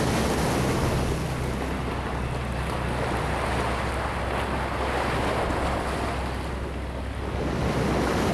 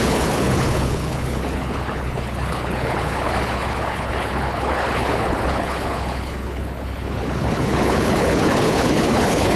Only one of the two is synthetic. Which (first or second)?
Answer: second